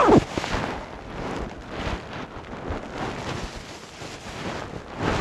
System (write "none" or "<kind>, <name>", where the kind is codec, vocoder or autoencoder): none